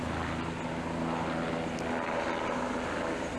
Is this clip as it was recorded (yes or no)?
yes